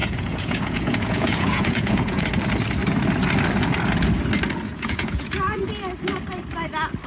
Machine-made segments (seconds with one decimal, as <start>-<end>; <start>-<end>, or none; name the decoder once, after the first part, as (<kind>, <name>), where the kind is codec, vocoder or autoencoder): 0.0-2.2 (vocoder, Vocos); 4.7-5.7